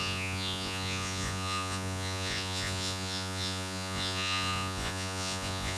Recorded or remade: remade